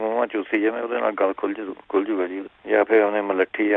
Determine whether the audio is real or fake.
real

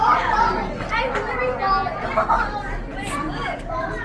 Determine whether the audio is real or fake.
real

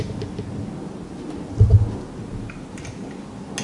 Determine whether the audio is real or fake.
real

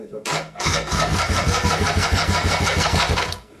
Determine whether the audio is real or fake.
fake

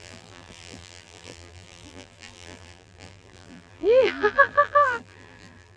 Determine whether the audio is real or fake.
fake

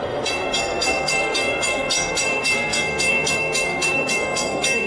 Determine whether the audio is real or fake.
fake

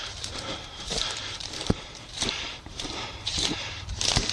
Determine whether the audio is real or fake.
fake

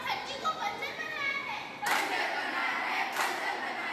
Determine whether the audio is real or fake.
real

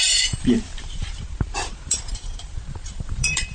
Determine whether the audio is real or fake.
fake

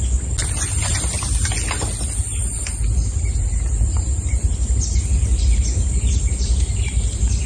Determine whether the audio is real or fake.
real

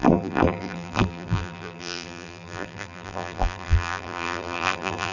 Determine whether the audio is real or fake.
fake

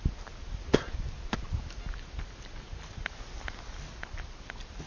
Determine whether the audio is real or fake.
real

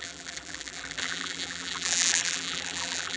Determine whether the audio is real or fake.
fake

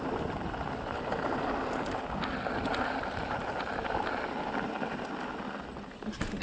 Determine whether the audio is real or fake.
real